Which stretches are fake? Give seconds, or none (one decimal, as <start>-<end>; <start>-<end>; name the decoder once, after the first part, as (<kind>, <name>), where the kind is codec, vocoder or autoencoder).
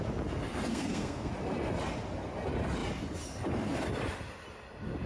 0.7-1.3 (codec, SNAC)